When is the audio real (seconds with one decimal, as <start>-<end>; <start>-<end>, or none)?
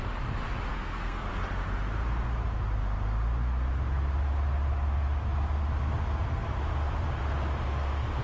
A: 0.0-0.7; 1.3-8.2